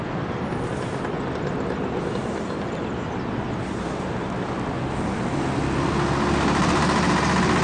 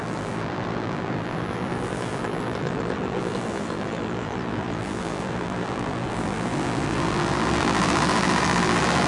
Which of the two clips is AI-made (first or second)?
second